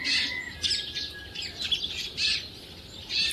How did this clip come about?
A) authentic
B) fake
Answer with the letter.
A